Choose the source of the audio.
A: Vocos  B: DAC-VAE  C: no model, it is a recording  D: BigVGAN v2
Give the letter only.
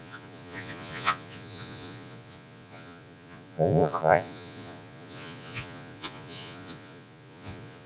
A